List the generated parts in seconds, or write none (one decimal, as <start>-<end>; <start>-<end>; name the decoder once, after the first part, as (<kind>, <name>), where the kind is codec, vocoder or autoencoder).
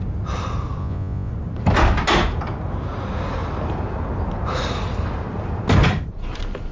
0.8-1.3 (vocoder, Vocos)